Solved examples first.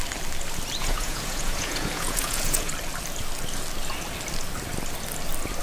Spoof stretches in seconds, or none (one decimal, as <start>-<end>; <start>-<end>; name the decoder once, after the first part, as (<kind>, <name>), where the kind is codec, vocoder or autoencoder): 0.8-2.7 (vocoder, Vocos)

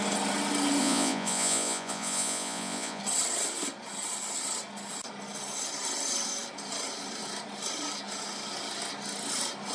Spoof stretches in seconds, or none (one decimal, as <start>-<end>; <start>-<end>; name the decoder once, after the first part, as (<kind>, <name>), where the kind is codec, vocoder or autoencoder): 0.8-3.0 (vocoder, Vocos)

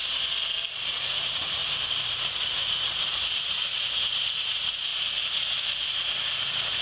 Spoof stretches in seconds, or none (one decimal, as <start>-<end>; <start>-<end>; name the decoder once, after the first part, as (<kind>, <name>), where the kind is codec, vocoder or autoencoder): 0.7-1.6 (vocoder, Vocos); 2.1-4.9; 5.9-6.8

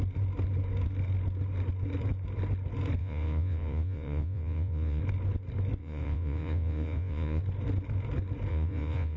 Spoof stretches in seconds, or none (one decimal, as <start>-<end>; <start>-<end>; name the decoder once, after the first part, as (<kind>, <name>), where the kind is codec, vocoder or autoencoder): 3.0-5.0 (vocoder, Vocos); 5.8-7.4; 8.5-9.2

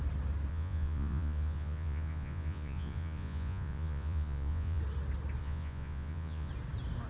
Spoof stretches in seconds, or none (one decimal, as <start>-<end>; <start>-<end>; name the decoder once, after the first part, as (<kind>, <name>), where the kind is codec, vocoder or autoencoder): 0.5-4.8 (vocoder, Vocos); 5.4-6.5